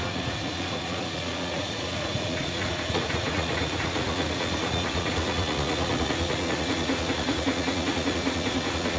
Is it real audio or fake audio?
fake